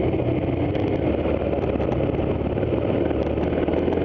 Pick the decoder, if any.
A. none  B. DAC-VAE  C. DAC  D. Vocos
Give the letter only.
A